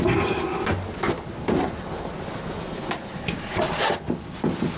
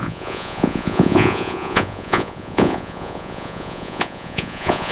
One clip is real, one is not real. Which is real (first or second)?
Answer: first